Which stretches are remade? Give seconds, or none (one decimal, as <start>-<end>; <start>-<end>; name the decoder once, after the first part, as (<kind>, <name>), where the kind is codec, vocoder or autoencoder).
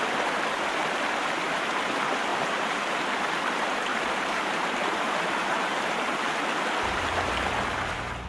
0.8-1.3 (vocoder, BigVGAN v2); 2.3-3.3; 3.9-6.4